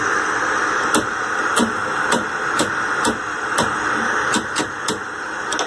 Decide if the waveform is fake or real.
real